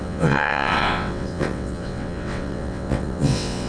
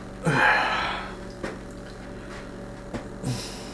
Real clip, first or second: second